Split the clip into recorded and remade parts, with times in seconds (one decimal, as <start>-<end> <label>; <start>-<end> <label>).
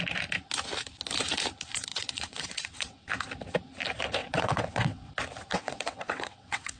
0.0-1.9 recorded; 1.9-3.0 remade; 3.0-4.2 recorded; 4.2-5.1 remade; 5.1-5.5 recorded; 5.5-6.8 remade